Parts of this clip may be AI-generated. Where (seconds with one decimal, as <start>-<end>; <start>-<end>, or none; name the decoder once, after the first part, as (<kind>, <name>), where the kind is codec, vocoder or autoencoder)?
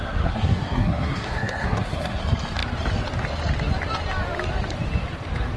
0.0-2.2 (codec, SNAC)